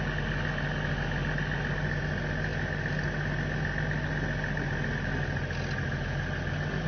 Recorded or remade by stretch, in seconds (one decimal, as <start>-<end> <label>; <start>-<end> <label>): 0.0-6.9 recorded